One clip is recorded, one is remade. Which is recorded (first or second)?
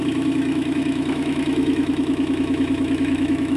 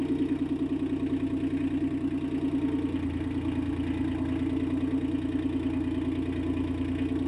second